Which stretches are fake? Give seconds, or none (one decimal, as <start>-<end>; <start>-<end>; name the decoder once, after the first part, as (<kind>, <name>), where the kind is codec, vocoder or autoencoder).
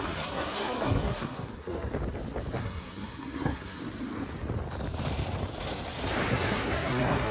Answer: 0.0-1.9 (codec, SNAC); 2.6-3.8; 6.3-7.3